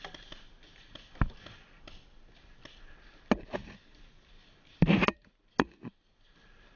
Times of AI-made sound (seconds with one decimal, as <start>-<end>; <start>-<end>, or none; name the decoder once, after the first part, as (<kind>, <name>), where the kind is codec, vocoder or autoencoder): 3.6-6.8 (vocoder, BigVGAN v2)